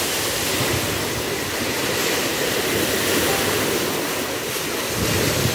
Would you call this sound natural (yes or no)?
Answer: yes